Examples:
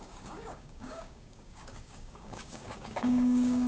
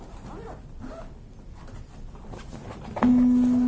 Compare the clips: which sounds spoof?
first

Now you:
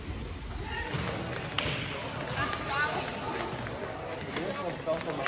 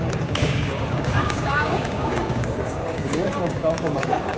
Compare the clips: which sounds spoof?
second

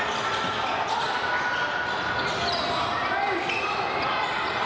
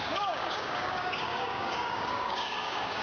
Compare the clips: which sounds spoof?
second